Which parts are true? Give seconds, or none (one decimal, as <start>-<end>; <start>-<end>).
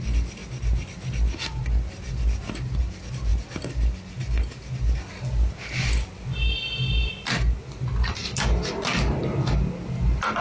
0.0-10.4